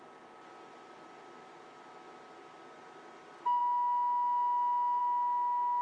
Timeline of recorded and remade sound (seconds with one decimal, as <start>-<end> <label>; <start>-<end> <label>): 0.0-5.8 recorded